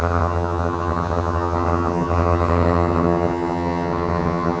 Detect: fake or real fake